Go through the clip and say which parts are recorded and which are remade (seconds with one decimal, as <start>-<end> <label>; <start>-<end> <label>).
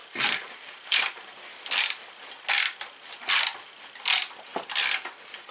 0.0-1.3 remade; 1.3-5.5 recorded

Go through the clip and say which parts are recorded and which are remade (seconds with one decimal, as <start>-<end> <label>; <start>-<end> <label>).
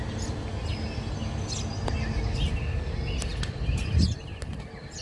0.0-3.3 recorded; 3.3-3.8 remade; 3.8-5.0 recorded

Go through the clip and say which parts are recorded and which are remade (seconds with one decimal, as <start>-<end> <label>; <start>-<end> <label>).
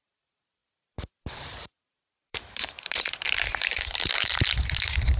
0.0-5.2 remade